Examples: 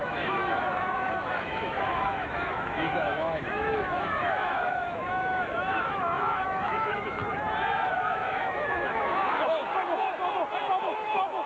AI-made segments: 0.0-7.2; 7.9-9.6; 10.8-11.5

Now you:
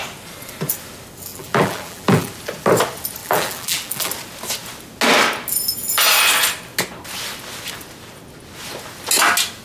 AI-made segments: 1.3-2.3; 3.2-4.1

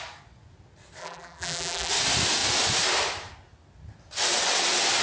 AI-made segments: 1.0-1.9

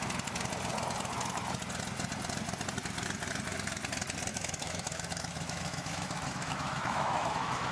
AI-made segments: 4.3-7.7